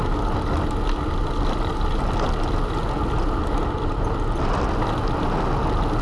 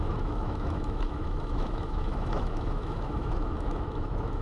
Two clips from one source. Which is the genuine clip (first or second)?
first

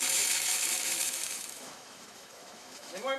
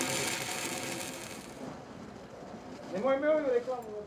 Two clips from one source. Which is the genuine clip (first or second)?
second